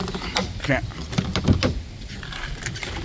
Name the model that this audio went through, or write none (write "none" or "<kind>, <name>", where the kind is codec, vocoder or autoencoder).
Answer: none